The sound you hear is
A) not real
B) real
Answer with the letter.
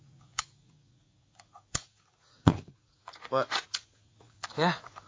A